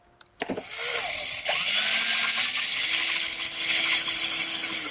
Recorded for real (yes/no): yes